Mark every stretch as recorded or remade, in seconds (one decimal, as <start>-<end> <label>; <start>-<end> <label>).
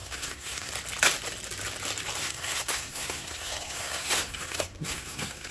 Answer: 0.0-0.7 remade; 0.7-2.2 recorded; 2.2-5.5 remade